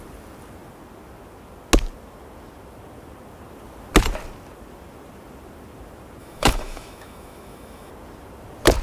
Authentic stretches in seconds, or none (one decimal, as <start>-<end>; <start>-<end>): 0.0-6.2; 7.9-8.8